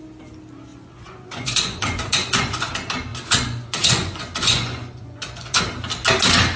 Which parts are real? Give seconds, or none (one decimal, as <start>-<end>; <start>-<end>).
0.0-0.7; 2.7-3.1; 5.6-6.6